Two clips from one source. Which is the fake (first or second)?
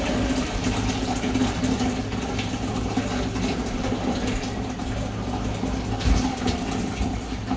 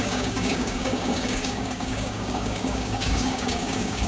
second